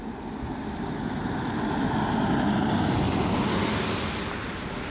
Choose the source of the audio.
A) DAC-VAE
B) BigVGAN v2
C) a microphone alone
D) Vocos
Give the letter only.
C